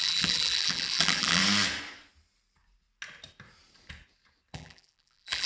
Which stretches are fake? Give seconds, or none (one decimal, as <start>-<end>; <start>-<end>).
0.0-1.4; 4.5-5.5